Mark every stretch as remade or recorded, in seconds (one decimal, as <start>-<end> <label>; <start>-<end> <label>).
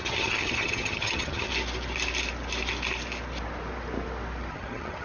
0.0-1.5 remade; 1.5-4.5 recorded; 4.5-5.0 remade